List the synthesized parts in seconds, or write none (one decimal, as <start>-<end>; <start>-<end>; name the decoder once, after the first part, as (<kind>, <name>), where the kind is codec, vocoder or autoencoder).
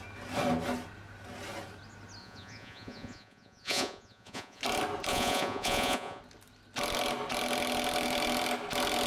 2.2-4.6 (vocoder, Vocos); 5.1-6.2